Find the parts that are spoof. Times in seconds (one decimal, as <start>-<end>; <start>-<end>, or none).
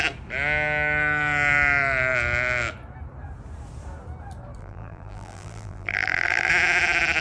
4.6-6.5